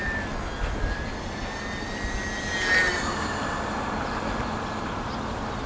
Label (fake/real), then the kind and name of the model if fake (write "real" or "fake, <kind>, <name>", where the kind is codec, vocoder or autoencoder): real